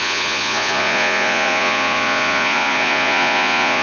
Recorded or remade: remade